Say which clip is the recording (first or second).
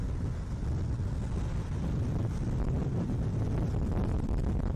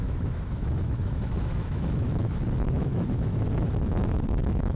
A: first